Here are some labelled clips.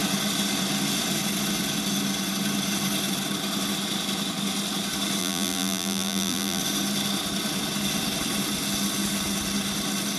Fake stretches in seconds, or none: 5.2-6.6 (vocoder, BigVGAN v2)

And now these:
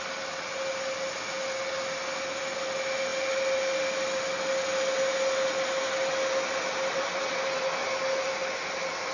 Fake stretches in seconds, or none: none